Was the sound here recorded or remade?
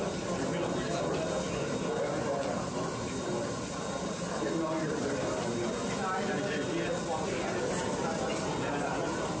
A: recorded